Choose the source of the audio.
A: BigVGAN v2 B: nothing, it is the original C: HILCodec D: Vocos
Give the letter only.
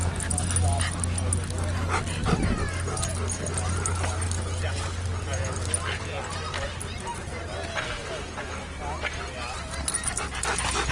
B